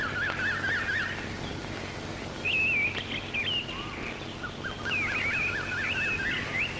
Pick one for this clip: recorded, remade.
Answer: recorded